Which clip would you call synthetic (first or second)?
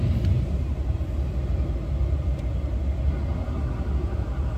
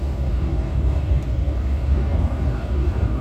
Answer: second